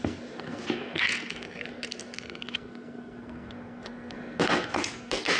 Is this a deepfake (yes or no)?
yes